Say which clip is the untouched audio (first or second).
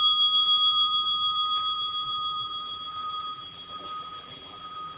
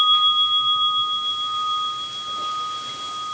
second